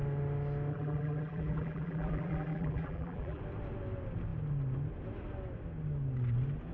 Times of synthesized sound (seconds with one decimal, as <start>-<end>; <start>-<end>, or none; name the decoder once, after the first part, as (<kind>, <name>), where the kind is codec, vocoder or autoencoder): 0.7-3.4 (vocoder, BigVGAN v2)